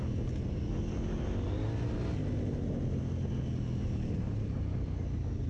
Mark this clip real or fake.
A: real